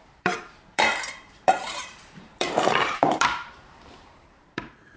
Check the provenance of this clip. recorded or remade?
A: remade